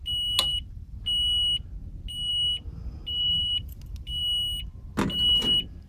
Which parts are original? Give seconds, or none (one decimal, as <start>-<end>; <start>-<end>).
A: 0.0-0.5; 1.0-3.2; 3.8-5.9

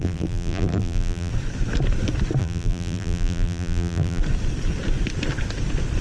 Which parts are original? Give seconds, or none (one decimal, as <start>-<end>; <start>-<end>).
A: 1.3-2.4; 4.2-6.0

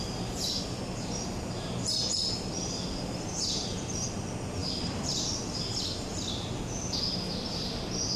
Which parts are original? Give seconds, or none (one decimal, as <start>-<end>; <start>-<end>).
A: 0.0-4.6; 5.6-8.2